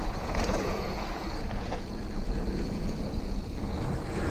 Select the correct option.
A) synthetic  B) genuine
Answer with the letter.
A